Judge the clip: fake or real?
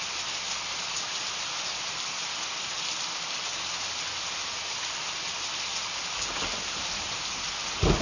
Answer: real